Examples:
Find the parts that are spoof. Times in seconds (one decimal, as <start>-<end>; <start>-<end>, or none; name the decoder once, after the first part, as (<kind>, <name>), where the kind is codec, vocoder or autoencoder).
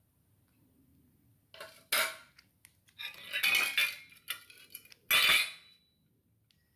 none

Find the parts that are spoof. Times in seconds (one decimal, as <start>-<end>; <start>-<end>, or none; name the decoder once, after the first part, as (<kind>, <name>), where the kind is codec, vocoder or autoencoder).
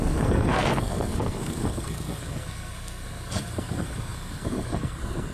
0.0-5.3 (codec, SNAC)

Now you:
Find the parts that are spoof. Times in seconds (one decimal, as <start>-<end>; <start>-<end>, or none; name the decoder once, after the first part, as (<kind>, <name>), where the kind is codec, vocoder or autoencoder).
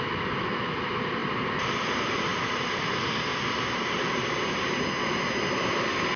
1.2-1.9 (vocoder, BigVGAN v2); 2.3-2.9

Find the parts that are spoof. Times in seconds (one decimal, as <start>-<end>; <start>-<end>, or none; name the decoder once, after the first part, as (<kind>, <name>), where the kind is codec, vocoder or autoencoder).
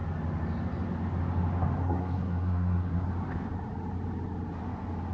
1.8-3.1 (codec, SNAC)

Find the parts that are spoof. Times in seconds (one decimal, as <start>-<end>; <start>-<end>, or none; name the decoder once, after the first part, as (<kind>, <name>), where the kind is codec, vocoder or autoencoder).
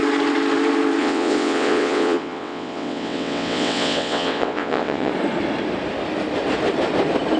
1.0-5.1 (vocoder, WaveNeXt)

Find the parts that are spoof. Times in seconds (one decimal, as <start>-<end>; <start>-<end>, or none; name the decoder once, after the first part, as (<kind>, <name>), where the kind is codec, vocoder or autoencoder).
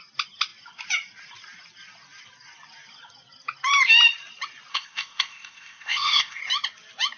4.7-6.4 (codec, ZipCodec)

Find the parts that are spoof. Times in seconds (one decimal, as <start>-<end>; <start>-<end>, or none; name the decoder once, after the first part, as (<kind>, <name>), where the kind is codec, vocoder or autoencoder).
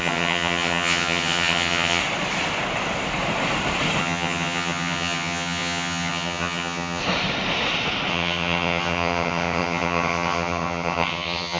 0.0-2.0 (vocoder, HiFi-GAN); 4.0-7.0; 8.1-11.6